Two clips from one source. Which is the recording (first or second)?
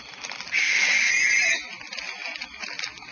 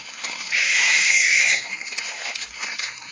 first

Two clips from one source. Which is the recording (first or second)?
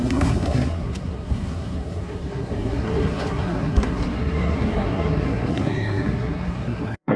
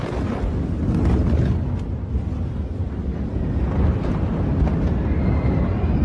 second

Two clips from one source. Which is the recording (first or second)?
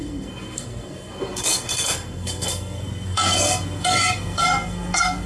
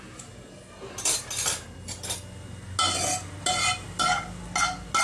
second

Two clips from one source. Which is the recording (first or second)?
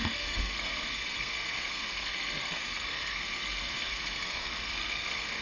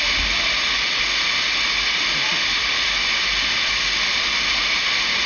second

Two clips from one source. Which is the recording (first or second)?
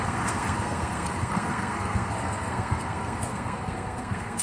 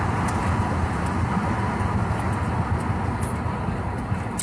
second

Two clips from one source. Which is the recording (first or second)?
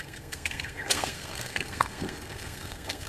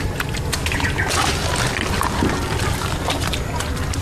second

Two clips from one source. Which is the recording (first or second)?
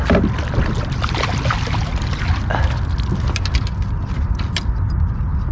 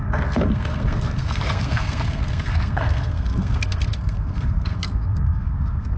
first